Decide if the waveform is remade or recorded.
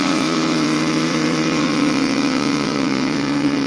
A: remade